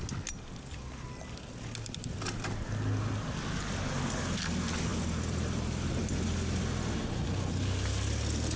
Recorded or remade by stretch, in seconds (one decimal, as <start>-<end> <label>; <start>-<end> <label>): 0.0-4.9 recorded; 4.9-5.9 remade; 5.9-8.6 recorded